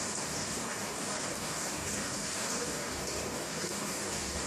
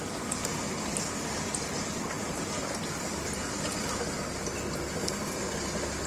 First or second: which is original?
second